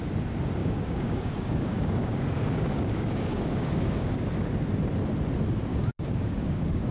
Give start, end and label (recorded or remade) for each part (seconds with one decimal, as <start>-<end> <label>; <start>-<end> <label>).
0.0-0.6 recorded; 0.6-4.3 remade; 4.3-5.7 recorded; 5.7-6.9 remade